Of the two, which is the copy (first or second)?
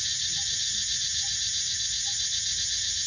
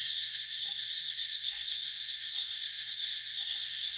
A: second